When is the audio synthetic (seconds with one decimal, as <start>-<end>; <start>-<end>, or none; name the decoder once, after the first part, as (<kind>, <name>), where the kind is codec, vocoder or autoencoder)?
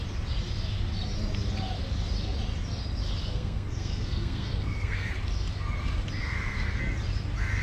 3.2-5.1 (codec, SNAC); 6.2-6.8